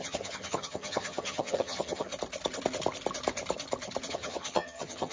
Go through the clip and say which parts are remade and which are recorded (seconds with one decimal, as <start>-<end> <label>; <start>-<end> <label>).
0.0-2.1 remade; 2.1-4.1 recorded; 4.1-5.1 remade